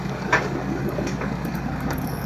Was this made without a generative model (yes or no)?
no